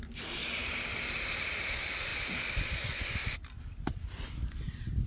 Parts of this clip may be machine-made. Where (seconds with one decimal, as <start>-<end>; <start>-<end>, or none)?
0.0-0.6; 1.3-5.1